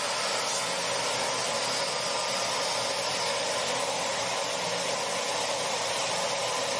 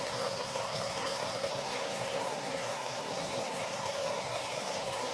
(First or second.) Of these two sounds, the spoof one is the second